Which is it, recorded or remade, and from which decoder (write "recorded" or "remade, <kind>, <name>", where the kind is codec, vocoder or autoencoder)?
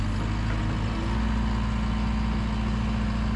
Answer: recorded